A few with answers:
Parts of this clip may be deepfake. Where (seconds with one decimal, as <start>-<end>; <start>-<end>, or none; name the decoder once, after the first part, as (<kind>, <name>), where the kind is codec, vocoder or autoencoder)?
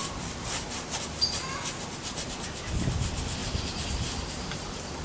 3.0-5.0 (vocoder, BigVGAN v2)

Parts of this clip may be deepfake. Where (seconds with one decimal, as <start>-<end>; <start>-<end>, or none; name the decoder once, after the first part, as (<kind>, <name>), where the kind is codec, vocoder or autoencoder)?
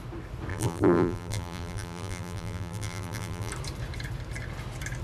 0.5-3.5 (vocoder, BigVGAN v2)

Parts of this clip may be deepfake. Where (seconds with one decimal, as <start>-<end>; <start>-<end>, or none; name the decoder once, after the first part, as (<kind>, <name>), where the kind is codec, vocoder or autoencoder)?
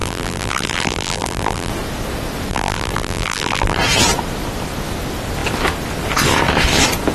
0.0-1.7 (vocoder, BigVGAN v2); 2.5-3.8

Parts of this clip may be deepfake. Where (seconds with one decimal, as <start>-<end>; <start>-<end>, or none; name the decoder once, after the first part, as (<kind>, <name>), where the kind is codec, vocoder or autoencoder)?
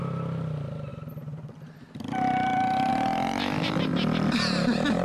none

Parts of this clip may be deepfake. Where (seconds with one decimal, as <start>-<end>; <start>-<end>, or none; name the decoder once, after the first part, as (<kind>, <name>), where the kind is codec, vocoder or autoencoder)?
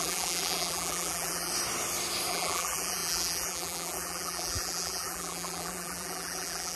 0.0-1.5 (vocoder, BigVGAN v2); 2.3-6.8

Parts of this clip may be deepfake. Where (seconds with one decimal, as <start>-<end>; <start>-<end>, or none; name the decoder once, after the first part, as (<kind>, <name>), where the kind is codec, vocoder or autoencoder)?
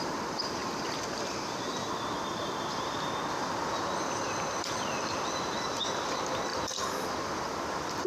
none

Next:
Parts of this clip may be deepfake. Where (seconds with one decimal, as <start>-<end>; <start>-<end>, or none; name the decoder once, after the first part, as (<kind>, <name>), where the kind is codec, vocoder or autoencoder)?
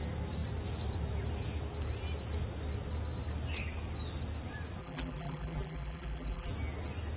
4.8-6.5 (vocoder, BigVGAN v2)